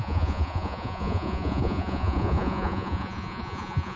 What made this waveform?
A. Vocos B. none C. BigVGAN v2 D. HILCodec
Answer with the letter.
A